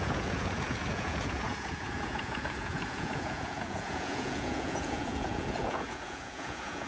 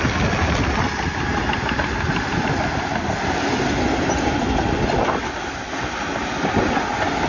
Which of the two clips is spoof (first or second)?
first